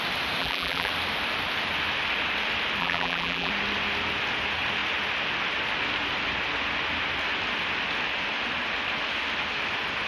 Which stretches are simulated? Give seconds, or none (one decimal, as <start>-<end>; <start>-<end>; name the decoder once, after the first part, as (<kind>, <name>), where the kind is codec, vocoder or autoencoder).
0.4-0.9 (vocoder, BigVGAN v2); 2.8-3.5